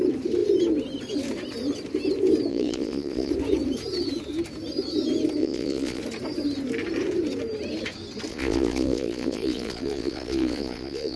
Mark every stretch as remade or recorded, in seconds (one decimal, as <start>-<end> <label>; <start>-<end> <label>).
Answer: 0.0-2.5 recorded; 2.5-3.3 remade; 3.3-5.4 recorded; 5.4-6.0 remade; 6.0-8.3 recorded; 8.3-11.2 remade